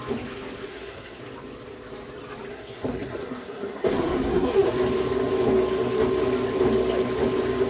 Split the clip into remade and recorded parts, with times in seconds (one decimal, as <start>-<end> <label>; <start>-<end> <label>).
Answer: 0.0-0.7 recorded; 0.7-1.2 remade; 1.2-2.5 recorded; 2.5-4.8 remade; 4.8-7.7 recorded